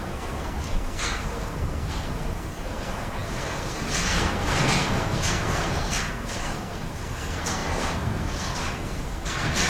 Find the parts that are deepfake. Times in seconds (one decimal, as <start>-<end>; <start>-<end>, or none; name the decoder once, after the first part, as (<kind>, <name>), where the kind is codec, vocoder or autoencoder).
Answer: 0.0-9.7 (codec, SNAC)